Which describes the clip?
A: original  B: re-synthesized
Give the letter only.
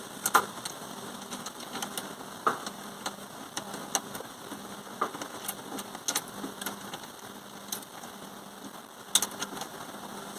A